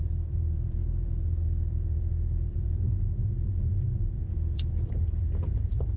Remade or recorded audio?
remade